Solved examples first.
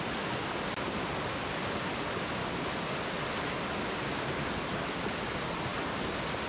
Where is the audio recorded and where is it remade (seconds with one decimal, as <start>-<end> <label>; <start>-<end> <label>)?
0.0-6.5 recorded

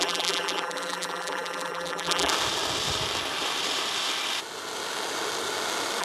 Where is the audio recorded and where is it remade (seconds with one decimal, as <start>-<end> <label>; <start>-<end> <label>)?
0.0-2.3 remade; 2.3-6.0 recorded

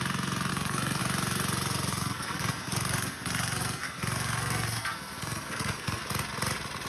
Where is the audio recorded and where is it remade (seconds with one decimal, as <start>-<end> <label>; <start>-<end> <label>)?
0.0-0.5 recorded; 0.5-1.0 remade; 1.0-1.9 recorded; 1.9-6.0 remade; 6.0-6.9 recorded

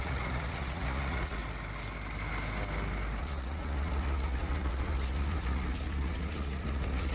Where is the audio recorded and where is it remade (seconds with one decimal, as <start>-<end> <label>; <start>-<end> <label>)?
0.0-1.4 remade; 1.4-3.2 recorded; 3.2-7.1 remade